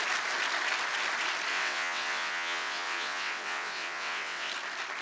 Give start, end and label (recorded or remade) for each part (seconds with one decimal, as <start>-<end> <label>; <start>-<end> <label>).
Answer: 0.0-1.5 recorded; 1.5-4.5 remade; 4.5-5.0 recorded

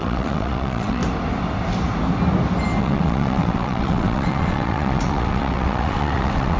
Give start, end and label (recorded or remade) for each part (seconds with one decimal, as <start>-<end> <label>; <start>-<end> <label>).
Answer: 0.0-1.0 remade; 1.0-2.8 recorded; 2.8-6.6 remade

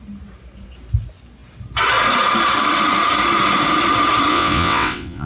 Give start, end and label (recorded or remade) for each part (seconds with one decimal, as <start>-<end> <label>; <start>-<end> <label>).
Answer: 0.0-4.3 recorded; 4.3-5.3 remade

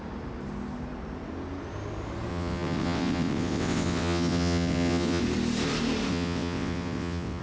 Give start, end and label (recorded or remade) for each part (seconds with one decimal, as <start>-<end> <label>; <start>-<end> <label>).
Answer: 0.0-2.3 recorded; 2.3-5.2 remade; 5.2-6.1 recorded; 6.1-7.4 remade

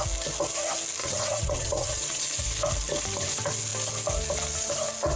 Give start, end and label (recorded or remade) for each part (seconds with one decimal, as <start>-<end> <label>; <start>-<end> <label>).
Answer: 0.0-1.0 recorded; 1.0-2.2 remade; 2.2-5.2 recorded

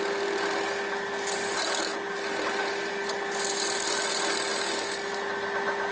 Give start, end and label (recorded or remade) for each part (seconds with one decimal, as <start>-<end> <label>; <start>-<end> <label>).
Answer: 0.0-5.9 recorded

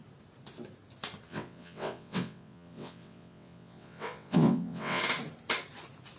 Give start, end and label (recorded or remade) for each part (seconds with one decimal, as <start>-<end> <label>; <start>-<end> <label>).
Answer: 0.0-1.3 recorded; 1.3-5.0 remade; 5.0-6.2 recorded

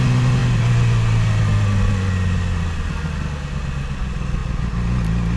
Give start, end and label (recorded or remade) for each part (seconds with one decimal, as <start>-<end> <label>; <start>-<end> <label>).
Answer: 0.0-5.4 recorded